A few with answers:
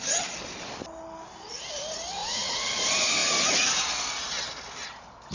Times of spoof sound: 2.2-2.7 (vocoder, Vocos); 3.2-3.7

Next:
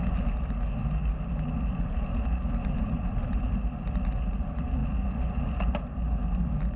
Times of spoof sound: 2.6-3.4 (vocoder, BigVGAN v2)